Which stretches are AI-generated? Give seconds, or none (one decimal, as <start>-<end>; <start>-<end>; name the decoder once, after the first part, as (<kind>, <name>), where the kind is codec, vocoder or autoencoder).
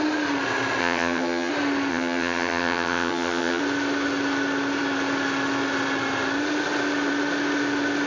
0.8-1.5 (vocoder, HiFi-GAN); 1.9-3.6